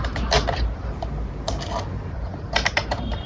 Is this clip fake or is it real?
real